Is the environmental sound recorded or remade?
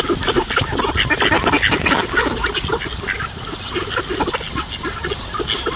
recorded